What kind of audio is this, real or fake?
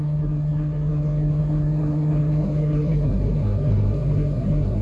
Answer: fake